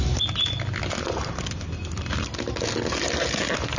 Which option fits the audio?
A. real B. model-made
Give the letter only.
A